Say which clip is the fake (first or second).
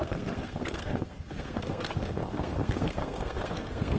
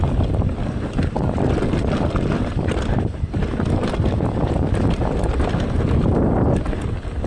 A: first